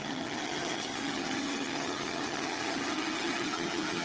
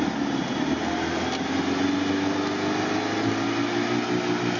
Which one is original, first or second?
second